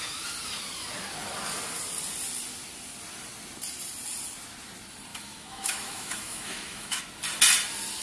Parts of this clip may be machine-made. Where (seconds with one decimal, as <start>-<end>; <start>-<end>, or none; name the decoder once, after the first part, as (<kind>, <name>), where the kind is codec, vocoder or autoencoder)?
5.1-7.0 (autoencoder, DAC-VAE)